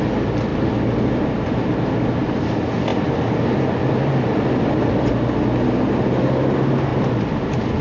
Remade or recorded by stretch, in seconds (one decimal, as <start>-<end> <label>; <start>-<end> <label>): 0.0-0.5 recorded; 0.5-1.7 remade; 1.7-2.9 recorded; 2.9-5.1 remade; 5.1-6.9 recorded; 6.9-7.8 remade